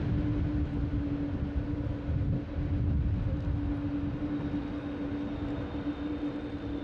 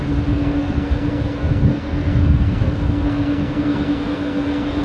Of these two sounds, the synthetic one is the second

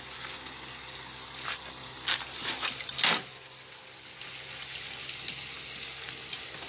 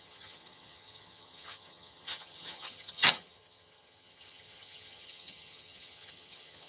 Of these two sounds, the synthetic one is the second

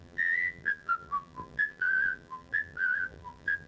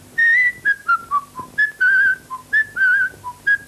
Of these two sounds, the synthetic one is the first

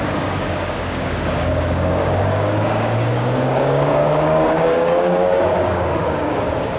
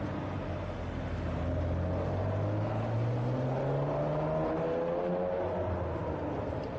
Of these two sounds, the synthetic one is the first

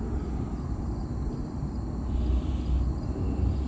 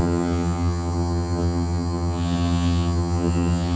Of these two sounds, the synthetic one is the second